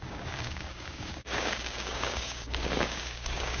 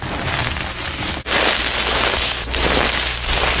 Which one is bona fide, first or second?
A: second